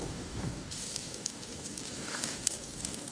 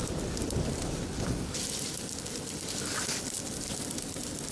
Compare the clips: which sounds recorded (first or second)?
second